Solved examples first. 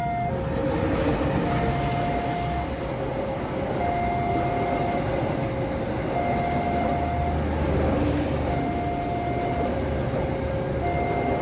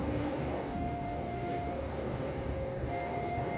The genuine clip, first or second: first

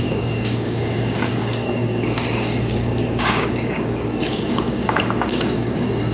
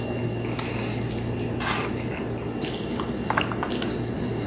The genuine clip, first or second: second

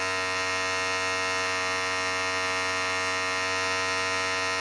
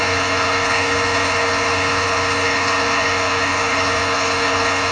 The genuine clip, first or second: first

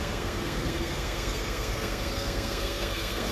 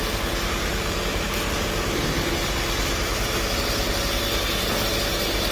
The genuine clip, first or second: second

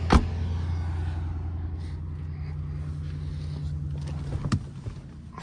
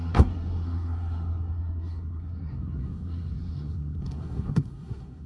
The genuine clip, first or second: first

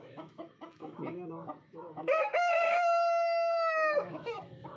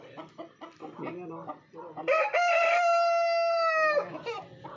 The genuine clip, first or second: second